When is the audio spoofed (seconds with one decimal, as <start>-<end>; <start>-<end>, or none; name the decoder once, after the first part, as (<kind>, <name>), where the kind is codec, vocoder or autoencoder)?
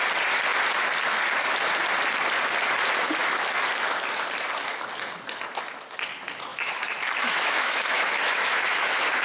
6.5-9.2 (autoencoder, DAC-VAE)